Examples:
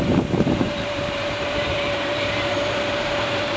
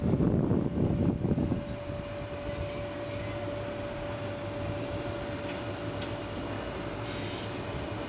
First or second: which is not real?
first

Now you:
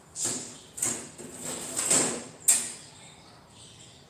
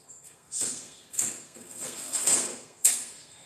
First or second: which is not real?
second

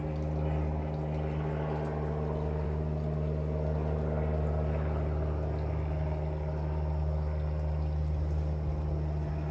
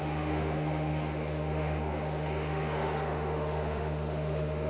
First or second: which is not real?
second